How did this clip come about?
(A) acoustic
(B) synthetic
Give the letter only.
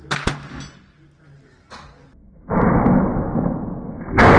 A